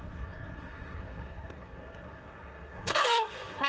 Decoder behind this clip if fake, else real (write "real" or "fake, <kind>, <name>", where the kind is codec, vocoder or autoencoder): fake, codec, SNAC